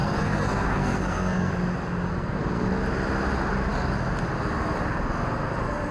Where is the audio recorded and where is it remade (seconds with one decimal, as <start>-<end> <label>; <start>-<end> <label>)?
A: 0.0-1.5 remade; 1.5-2.1 recorded; 2.1-2.7 remade; 2.7-5.9 recorded